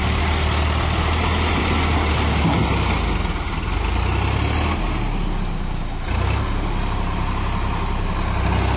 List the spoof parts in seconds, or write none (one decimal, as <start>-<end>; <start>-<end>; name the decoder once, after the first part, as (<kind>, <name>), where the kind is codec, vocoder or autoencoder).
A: none